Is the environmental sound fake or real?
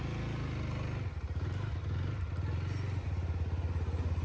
real